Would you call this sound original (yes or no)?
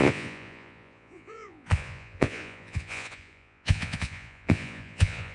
no